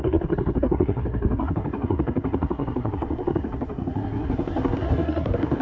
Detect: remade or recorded remade